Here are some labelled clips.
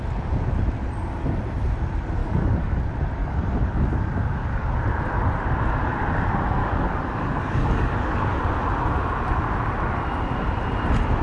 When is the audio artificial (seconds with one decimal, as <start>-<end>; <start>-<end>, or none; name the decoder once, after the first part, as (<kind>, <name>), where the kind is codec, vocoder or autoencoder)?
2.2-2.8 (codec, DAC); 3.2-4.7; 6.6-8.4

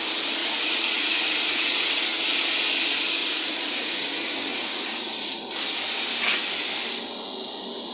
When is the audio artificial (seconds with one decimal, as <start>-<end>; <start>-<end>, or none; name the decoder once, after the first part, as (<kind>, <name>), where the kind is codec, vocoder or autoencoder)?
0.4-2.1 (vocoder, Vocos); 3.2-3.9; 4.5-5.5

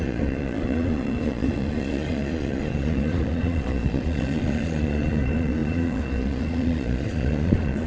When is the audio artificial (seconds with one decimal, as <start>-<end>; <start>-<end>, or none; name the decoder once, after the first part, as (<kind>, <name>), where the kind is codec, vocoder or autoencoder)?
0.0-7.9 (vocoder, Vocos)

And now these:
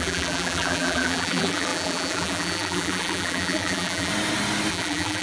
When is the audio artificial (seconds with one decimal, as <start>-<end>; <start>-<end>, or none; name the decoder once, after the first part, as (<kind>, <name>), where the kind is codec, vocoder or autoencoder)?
0.0-4.1 (vocoder, BigVGAN v2); 4.7-5.2

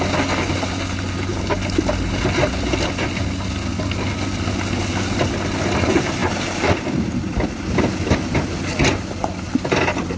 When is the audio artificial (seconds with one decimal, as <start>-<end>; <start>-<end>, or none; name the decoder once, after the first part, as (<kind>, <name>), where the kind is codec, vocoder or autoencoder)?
none